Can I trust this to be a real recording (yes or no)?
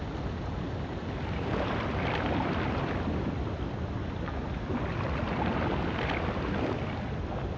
yes